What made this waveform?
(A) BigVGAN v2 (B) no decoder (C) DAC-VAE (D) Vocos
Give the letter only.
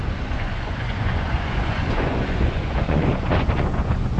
D